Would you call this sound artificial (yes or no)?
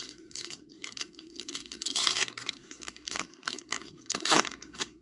yes